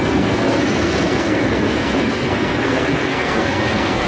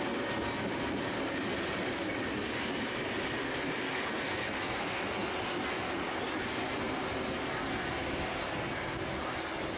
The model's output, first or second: first